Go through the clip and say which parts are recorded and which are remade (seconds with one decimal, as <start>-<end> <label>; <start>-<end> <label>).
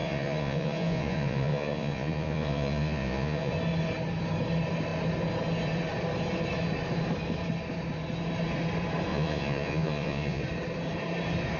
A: 0.0-3.5 remade; 3.5-9.1 recorded; 9.1-10.4 remade; 10.4-11.6 recorded